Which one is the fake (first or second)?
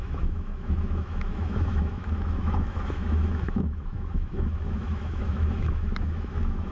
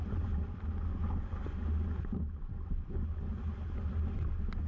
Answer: first